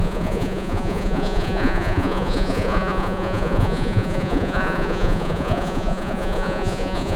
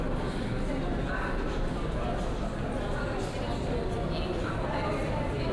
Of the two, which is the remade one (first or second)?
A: first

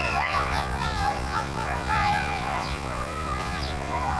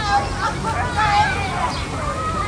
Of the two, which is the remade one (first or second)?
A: first